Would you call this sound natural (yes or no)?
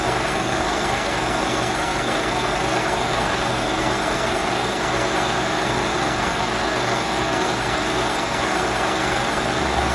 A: no